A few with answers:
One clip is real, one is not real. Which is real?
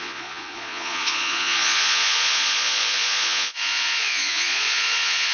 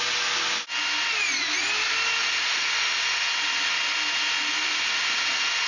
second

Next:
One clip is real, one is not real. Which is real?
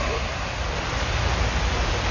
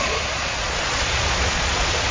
first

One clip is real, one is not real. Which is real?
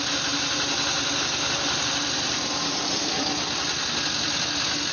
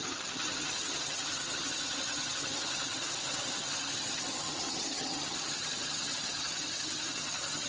first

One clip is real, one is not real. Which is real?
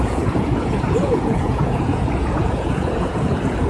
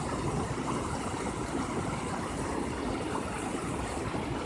second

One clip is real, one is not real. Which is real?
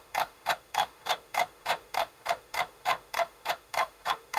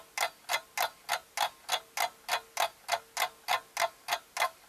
second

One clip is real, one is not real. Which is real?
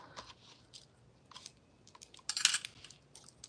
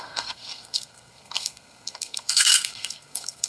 first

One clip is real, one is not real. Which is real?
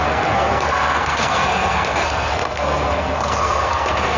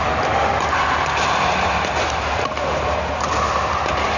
second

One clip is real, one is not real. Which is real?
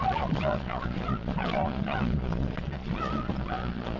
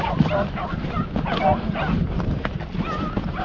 second